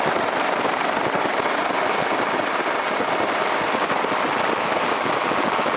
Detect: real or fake real